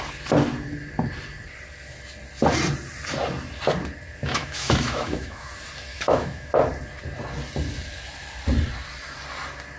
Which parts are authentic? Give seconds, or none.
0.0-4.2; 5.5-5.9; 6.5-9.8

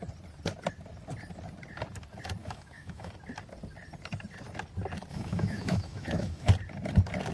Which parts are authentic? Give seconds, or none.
0.0-2.4; 3.1-5.1; 6.5-7.3

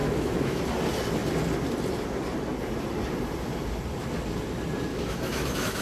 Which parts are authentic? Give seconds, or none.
0.6-4.9

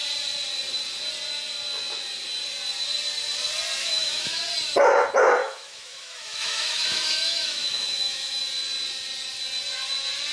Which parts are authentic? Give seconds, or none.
0.0-3.8; 4.4-5.4; 8.4-10.3